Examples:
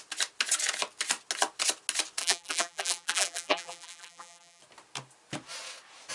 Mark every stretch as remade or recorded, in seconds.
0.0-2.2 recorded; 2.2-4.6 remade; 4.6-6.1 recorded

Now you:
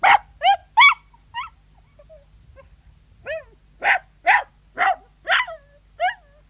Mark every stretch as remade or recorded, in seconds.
0.0-6.5 recorded

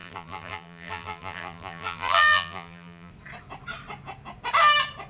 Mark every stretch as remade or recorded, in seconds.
0.0-3.1 remade; 3.1-5.1 recorded

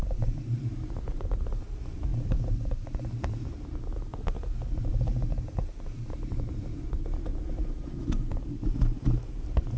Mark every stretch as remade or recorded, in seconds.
0.0-4.1 remade; 4.1-4.9 recorded; 4.9-7.3 remade; 7.3-8.1 recorded; 8.1-9.8 remade

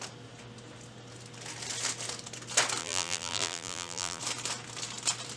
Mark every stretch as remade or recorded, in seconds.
0.0-2.8 recorded; 2.8-4.2 remade; 4.2-5.4 recorded